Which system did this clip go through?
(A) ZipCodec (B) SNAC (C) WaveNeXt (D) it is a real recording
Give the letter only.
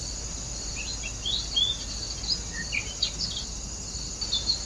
D